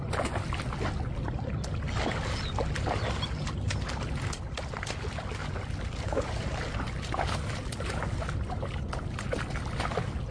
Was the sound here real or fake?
real